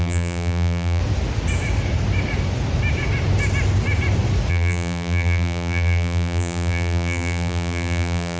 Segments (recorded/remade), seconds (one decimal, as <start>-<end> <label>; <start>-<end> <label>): 0.0-1.0 remade; 1.0-4.5 recorded; 4.5-8.4 remade